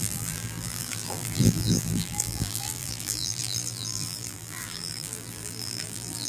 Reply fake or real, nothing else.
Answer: fake